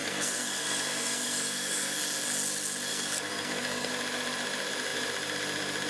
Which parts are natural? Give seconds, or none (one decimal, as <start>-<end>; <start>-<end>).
2.0-2.9; 3.9-5.9